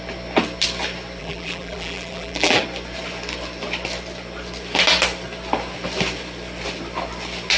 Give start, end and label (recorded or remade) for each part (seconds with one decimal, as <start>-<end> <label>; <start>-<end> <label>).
0.0-1.2 recorded; 1.2-2.6 remade; 2.6-7.6 recorded